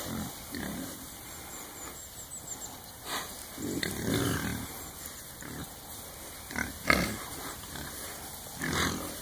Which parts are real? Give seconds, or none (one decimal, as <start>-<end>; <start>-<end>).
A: 0.0-9.2